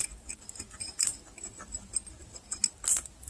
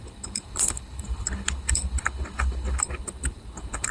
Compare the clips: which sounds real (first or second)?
first